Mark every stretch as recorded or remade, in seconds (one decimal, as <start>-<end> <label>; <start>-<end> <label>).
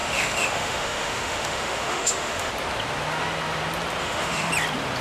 0.0-2.5 remade; 2.5-4.0 recorded; 4.0-4.5 remade; 4.5-5.0 recorded